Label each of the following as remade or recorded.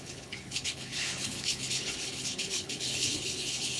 remade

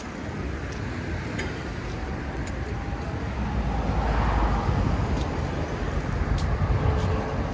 recorded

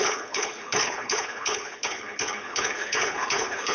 remade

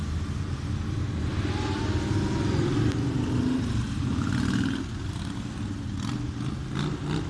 recorded